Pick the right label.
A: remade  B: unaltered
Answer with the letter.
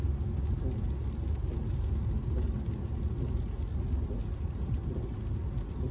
B